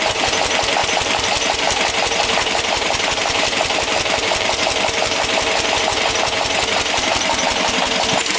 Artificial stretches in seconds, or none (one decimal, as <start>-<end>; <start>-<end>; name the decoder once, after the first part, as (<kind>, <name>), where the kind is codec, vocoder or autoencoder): 0.8-5.8 (vocoder, BigVGAN v2)